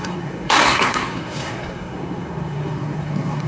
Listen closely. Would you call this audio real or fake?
fake